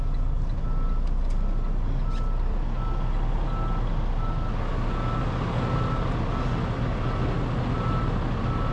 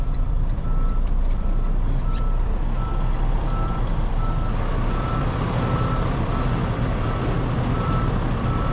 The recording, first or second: first